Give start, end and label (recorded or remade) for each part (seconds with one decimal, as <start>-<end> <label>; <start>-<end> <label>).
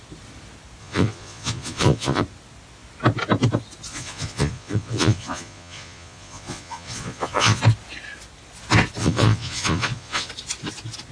0.0-0.8 recorded; 0.8-2.2 remade; 2.2-3.9 recorded; 3.9-7.6 remade; 7.6-9.0 recorded; 9.0-10.3 remade; 10.3-11.1 recorded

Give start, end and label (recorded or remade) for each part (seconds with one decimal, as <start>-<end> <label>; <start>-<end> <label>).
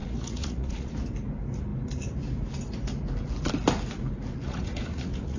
0.0-0.9 remade; 0.9-4.4 recorded; 4.4-5.4 remade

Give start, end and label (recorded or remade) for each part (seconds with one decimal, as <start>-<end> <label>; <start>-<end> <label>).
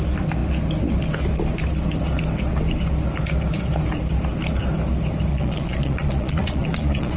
0.0-5.3 recorded; 5.3-7.2 remade